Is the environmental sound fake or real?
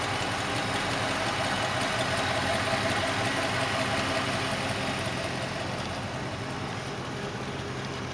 real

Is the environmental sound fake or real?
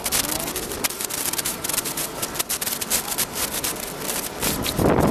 real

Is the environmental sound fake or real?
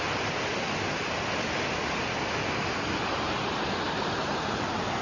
real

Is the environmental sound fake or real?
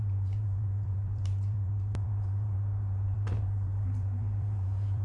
fake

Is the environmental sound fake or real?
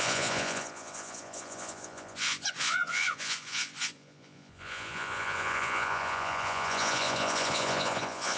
fake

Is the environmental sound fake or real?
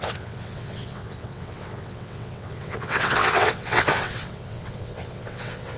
fake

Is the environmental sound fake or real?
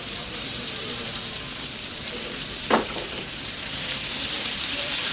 fake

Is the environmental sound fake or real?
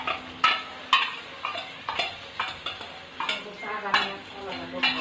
real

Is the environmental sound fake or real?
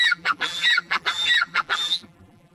fake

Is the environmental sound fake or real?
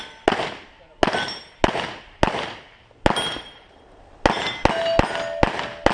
real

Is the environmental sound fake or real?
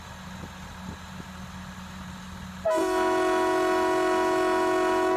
real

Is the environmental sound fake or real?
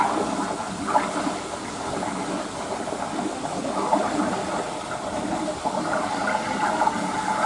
real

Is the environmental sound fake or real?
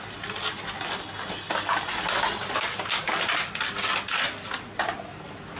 real